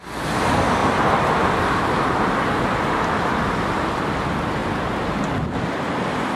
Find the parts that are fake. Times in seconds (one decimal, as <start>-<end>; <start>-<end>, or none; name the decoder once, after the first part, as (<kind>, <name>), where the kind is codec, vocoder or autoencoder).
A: 0.8-2.3 (vocoder, BigVGAN v2)